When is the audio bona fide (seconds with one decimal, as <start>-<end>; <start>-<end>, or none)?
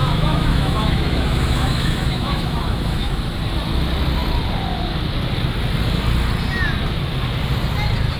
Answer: 3.1-8.2